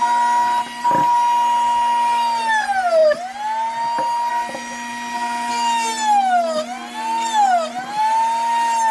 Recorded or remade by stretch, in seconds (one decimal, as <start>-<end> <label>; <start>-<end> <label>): 0.0-8.9 recorded